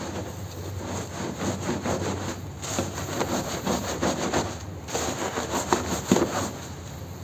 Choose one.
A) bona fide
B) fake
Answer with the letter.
B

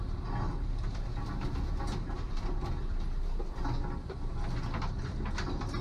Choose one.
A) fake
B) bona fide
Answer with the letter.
B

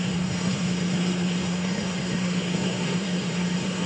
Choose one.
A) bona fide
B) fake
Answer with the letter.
B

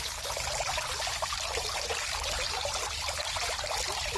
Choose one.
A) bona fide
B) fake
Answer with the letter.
A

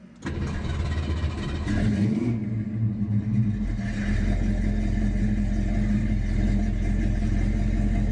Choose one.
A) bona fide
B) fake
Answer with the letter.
A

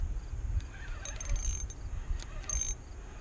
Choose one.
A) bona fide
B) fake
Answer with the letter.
A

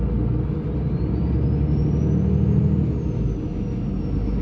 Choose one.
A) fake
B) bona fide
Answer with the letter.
B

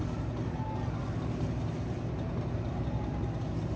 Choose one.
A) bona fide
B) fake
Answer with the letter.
A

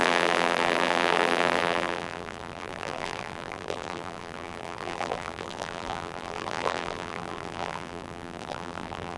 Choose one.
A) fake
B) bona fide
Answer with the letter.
A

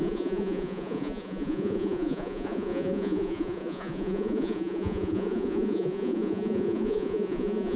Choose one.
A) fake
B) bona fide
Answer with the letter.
A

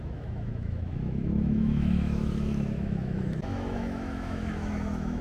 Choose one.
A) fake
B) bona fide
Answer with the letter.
A